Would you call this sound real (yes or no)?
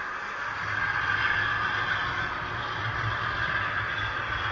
yes